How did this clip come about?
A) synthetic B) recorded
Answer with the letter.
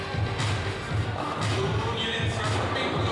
B